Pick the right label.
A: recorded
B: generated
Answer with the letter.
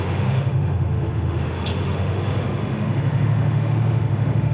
B